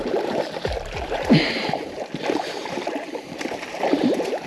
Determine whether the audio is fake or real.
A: fake